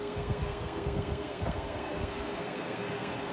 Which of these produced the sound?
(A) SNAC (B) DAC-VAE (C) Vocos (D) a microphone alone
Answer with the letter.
A